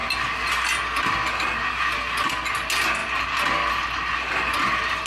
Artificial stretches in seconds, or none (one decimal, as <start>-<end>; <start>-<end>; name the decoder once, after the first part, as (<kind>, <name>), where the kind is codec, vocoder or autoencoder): none